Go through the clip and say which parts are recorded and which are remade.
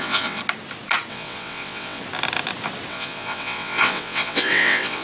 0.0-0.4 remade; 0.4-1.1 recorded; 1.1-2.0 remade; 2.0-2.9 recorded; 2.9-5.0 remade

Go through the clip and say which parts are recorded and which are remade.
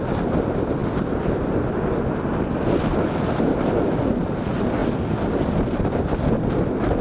0.0-7.0 recorded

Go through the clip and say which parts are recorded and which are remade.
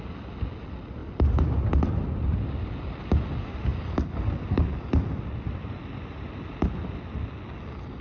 0.0-8.0 recorded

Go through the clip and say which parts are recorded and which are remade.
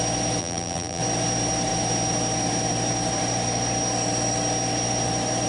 0.0-0.4 recorded; 0.4-1.0 remade; 1.0-5.5 recorded